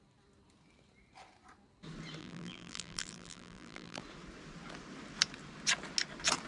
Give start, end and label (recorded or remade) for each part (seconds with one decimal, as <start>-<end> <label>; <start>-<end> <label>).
0.0-2.2 recorded; 2.2-4.0 remade; 4.0-6.5 recorded